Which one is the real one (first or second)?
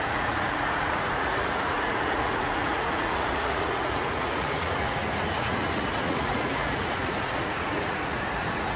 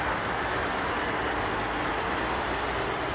second